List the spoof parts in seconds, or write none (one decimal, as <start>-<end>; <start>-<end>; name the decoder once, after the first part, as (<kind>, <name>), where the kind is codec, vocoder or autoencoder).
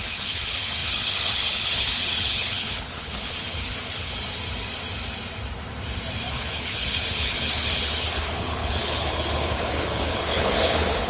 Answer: 0.0-4.1 (codec, HILCodec); 6.3-11.1